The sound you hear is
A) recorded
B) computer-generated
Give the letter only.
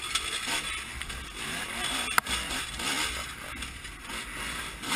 A